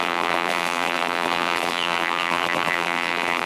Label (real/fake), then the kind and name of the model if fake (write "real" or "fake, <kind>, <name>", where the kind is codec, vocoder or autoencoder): fake, vocoder, BigVGAN v2